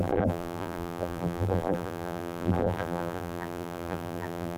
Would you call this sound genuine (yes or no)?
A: no